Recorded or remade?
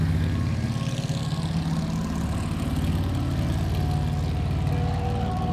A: recorded